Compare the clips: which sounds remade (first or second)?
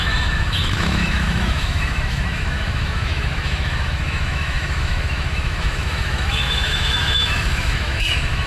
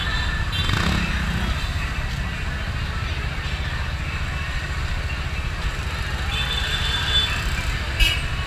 first